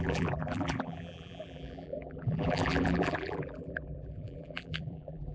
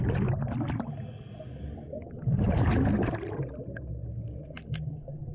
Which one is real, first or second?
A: second